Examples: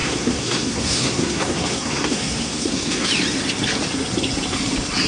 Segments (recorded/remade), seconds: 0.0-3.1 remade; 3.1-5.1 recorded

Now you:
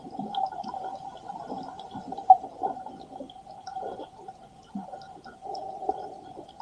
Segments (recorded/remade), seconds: 0.0-6.6 recorded

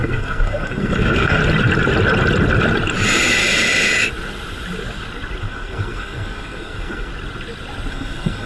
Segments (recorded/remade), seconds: 0.0-1.4 remade; 1.4-5.4 recorded; 5.4-7.1 remade; 7.1-7.9 recorded; 7.9-8.5 remade

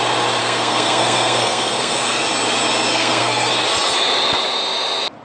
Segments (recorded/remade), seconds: 0.0-0.4 recorded; 0.4-2.2 remade; 2.2-2.9 recorded; 2.9-3.5 remade; 3.5-5.2 recorded

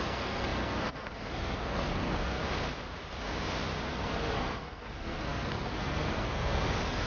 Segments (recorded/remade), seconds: 0.0-2.4 remade; 2.4-3.9 recorded; 3.9-7.1 remade